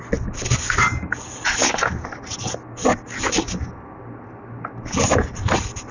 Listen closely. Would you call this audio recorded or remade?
recorded